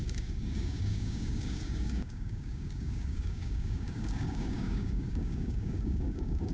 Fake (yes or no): yes